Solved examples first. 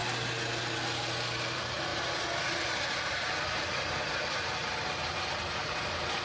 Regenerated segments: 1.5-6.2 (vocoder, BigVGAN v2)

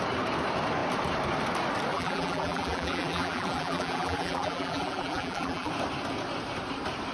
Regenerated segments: 1.9-5.7 (vocoder, BigVGAN v2)

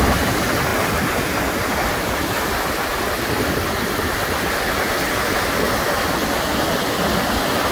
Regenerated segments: none

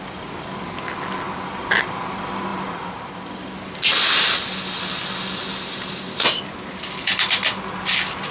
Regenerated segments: 2.5-3.3 (vocoder, BigVGAN v2)

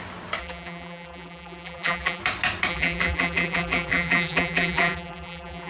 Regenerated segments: 0.4-2.2 (vocoder, BigVGAN v2); 2.7-5.7

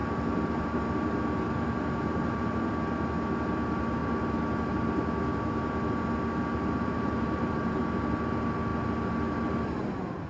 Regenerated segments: 0.0-2.7 (vocoder, BigVGAN v2); 6.5-7.8

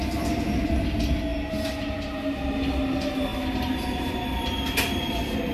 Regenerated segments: none

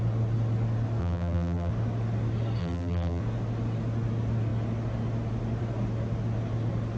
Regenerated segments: 1.0-1.7 (vocoder, BigVGAN v2); 2.6-3.2